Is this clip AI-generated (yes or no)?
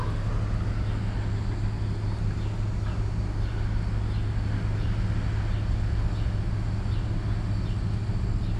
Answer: no